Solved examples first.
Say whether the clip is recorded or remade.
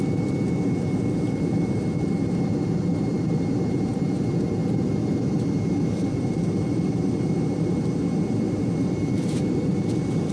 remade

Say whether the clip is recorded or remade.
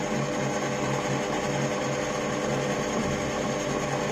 recorded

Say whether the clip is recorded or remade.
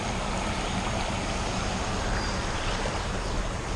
recorded